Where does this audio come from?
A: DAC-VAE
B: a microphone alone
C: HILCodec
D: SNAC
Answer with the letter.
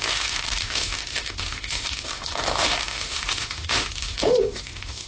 A